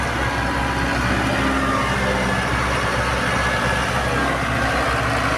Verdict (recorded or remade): recorded